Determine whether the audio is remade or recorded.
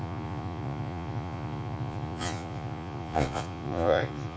remade